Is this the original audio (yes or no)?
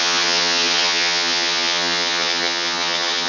no